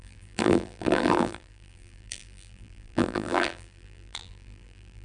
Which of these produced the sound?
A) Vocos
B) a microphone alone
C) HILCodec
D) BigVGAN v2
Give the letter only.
D